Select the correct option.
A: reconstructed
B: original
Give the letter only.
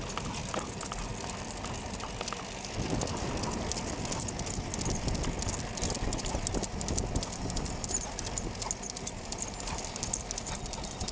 B